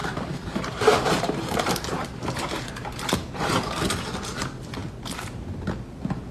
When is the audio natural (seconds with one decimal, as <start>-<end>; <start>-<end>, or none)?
3.8-6.3